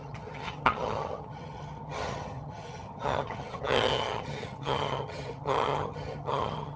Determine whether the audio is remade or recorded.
remade